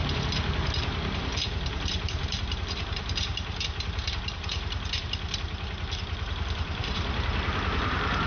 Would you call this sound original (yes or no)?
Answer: no